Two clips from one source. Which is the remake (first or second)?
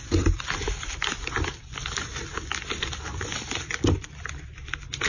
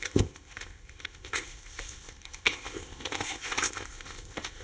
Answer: second